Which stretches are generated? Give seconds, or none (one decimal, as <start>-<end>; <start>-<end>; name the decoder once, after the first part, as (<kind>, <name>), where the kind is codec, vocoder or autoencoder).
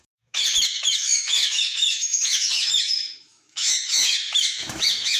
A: 0.0-5.2 (autoencoder, DAC-VAE)